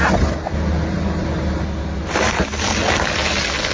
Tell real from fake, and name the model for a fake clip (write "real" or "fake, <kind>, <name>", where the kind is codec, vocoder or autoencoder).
real